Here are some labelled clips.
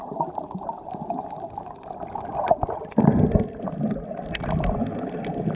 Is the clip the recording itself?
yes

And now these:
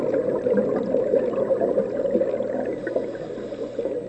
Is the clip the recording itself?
yes